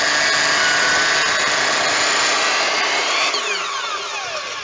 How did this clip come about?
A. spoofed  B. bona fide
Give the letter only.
B